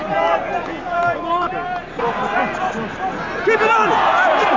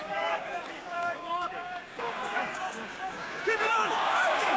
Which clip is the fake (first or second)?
second